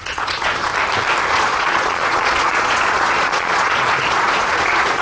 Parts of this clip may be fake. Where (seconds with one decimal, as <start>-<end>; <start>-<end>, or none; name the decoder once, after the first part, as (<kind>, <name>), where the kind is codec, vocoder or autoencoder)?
0.0-0.7 (vocoder, Vocos); 1.3-5.0